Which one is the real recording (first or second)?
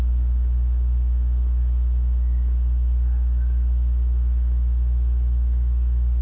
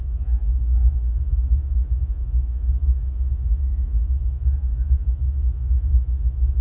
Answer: first